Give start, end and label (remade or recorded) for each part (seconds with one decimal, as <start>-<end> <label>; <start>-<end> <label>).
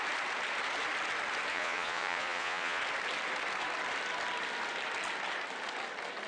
0.0-1.5 recorded; 1.5-2.8 remade; 2.8-6.3 recorded